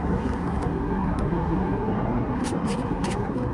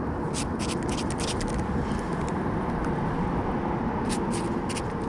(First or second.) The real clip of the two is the second